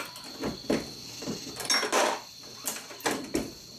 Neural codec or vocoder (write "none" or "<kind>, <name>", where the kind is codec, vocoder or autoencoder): none